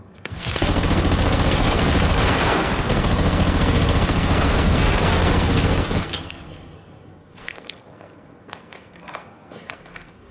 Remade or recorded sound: remade